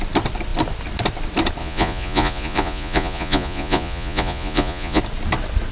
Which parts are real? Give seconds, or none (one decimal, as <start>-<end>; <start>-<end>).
0.0-1.6; 5.0-5.7